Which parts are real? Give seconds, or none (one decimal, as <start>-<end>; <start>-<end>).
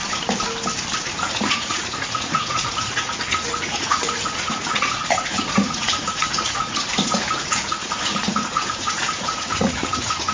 0.0-1.0